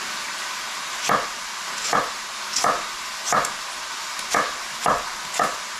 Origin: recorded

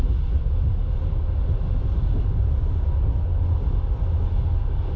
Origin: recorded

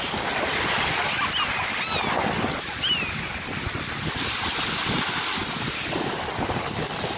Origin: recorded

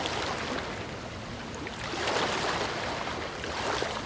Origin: recorded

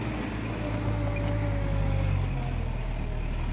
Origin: recorded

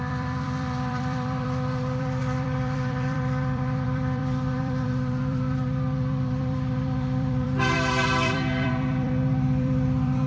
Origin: remade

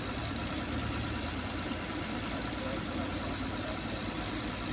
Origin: remade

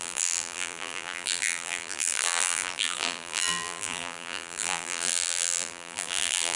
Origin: remade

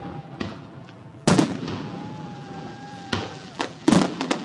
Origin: remade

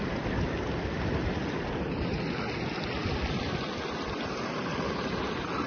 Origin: recorded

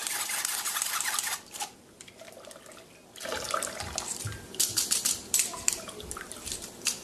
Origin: remade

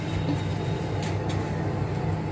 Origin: recorded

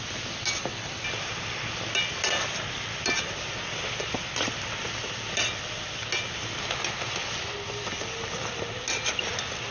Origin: recorded